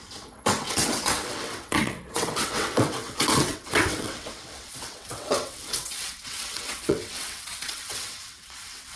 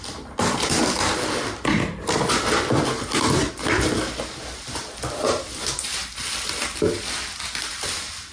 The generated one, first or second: first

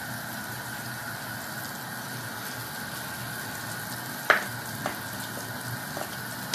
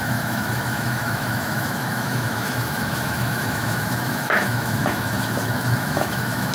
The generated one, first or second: second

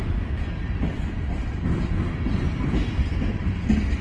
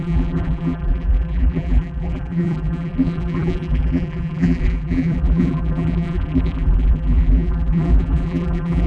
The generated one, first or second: second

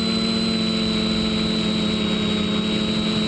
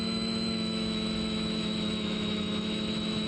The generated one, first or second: second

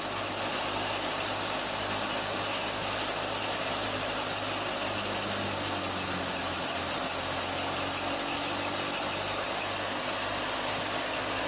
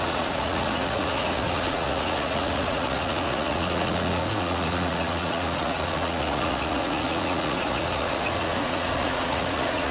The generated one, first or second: second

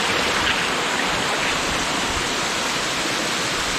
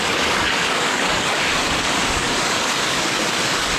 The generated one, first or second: second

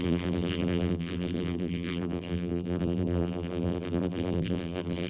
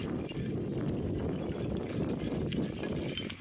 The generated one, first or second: first